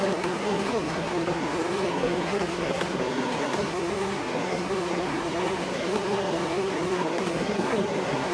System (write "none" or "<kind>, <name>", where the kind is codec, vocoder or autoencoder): codec, SNAC